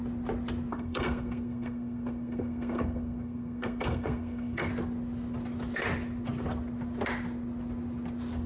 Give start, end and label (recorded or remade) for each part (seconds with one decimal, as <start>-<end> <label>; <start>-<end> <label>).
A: 0.0-0.7 recorded; 0.7-4.7 remade; 4.7-8.5 recorded